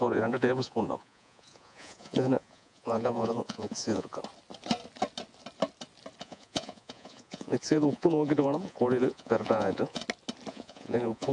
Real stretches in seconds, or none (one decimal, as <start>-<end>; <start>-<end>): 4.2-6.2; 10.0-10.5